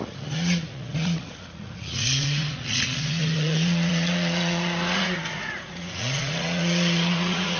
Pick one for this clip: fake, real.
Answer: fake